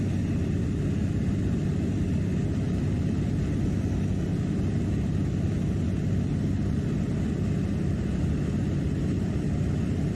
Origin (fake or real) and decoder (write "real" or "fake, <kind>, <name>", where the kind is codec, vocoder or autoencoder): real